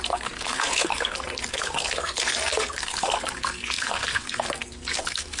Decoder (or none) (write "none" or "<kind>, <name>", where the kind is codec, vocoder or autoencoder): codec, SNAC